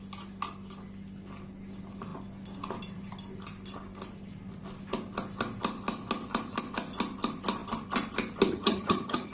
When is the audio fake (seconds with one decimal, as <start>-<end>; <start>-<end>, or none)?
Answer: 8.5-9.3